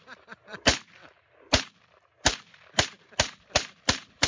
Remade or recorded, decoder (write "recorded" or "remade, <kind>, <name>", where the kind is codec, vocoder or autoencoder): remade, vocoder, BigVGAN v2